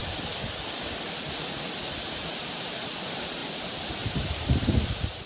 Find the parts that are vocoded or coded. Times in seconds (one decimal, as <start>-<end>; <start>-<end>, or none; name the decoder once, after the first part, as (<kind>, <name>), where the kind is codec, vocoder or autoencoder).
2.4-5.3 (vocoder, BigVGAN v2)